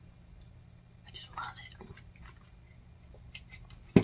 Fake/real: real